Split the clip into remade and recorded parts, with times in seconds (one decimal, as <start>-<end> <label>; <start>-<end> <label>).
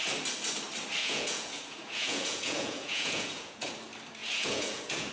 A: 0.0-1.0 recorded; 1.0-3.7 remade; 3.7-4.2 recorded; 4.2-5.1 remade